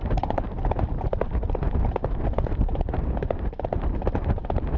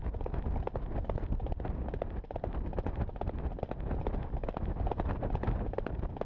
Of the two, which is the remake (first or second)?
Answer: first